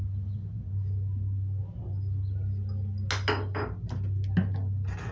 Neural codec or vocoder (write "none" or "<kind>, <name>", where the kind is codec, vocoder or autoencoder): none